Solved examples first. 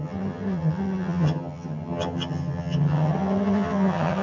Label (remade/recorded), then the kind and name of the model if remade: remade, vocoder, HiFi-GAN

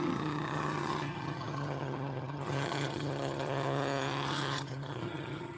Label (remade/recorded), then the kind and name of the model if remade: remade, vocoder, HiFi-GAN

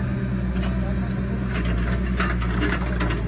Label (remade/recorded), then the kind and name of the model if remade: recorded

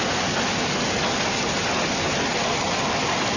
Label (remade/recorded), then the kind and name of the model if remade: recorded